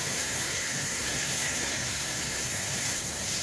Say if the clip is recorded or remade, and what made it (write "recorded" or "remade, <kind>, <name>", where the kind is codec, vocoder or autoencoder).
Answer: remade, codec, SNAC